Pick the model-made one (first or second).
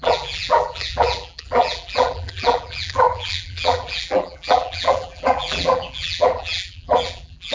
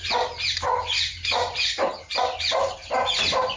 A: first